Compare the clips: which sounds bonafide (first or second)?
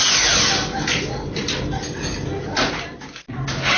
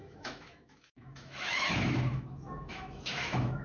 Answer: first